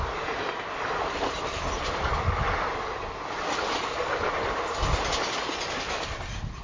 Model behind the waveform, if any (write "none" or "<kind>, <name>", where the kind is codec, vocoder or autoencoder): none